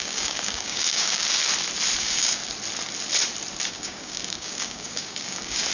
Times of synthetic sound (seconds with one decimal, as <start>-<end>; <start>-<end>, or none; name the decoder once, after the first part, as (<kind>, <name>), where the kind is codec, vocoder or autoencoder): 0.0-1.4 (codec, DAC); 2.0-2.4; 3.7-5.7